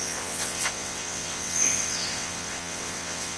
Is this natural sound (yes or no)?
no